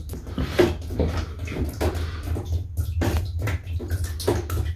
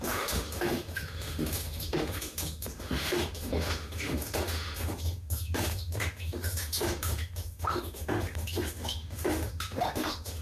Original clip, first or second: first